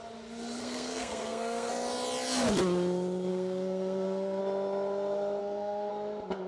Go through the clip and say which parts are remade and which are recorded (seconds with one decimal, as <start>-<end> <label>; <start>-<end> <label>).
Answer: 0.0-0.6 recorded; 0.6-1.7 remade; 1.7-3.3 recorded; 3.3-4.4 remade; 4.4-5.4 recorded; 5.4-5.9 remade; 5.9-6.5 recorded